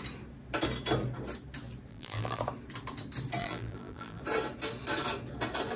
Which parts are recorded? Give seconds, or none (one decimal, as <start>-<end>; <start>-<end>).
0.0-1.9; 2.4-3.4; 4.2-5.8